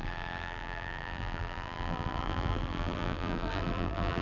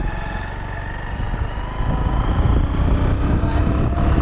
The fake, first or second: first